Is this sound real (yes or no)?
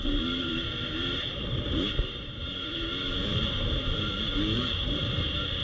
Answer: no